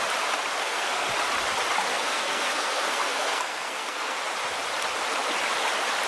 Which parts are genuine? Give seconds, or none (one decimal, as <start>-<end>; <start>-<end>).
0.0-0.6; 1.1-1.9; 4.2-6.1